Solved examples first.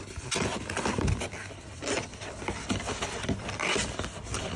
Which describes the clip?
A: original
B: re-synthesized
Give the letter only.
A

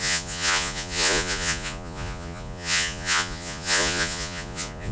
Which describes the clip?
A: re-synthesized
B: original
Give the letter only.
A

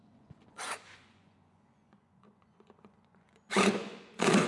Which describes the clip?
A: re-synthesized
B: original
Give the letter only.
A